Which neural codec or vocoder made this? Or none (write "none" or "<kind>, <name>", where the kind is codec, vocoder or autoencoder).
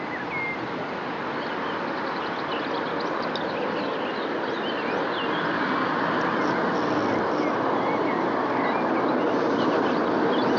none